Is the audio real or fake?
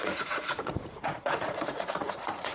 fake